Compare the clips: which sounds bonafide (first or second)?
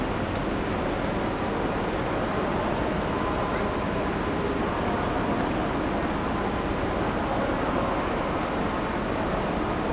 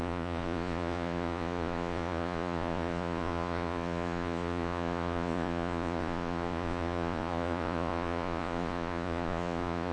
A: first